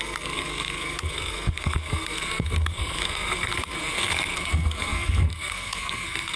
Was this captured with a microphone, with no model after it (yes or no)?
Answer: no